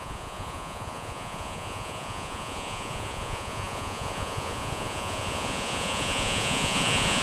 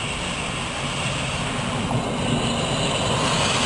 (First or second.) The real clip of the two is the second